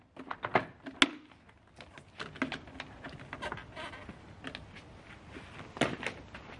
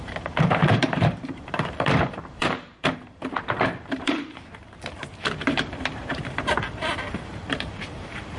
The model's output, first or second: second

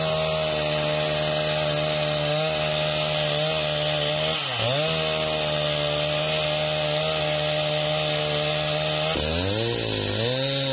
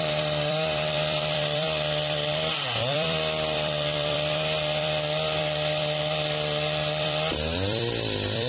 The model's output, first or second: second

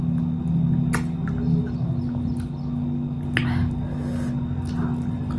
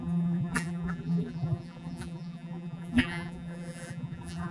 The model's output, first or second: second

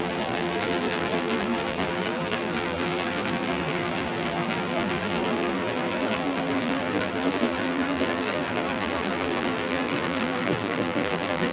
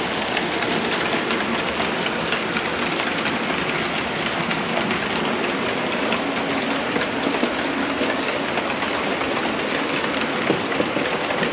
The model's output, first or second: first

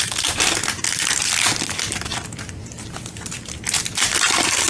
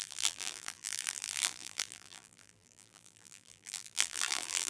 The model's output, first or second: second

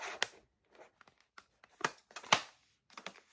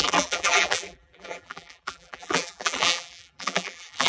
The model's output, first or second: second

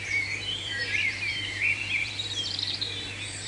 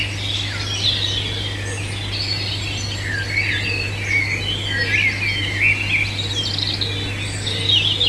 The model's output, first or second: first